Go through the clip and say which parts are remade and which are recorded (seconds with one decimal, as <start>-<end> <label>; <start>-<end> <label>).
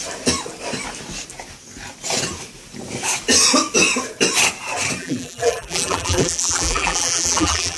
0.0-5.0 recorded; 5.0-7.8 remade